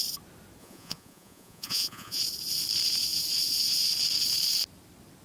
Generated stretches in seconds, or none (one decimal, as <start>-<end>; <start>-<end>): 0.6-2.2